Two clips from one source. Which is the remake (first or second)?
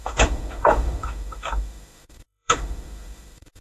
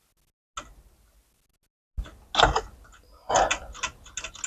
first